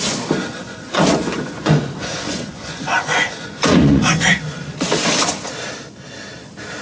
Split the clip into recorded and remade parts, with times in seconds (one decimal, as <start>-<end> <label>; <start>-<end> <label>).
0.0-0.5 recorded; 0.5-4.6 remade; 4.6-6.8 recorded